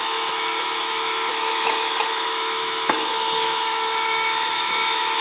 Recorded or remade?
remade